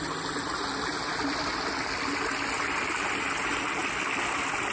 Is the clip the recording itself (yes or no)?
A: yes